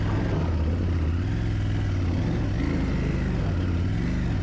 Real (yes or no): yes